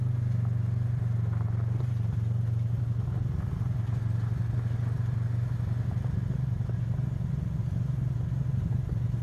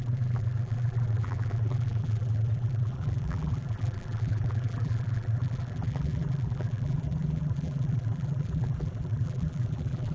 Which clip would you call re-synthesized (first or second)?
second